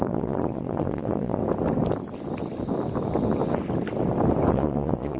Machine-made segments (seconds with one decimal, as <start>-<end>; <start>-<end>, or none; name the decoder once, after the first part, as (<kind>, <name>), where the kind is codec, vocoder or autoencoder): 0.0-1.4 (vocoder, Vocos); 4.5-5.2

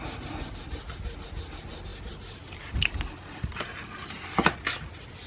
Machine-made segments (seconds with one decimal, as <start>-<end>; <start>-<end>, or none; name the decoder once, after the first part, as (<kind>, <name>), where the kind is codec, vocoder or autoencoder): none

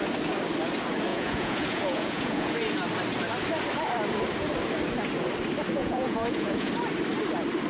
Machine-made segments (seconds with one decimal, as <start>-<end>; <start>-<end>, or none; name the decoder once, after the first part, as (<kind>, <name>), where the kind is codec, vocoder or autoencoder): 1.1-2.5 (vocoder, Vocos); 5.8-6.7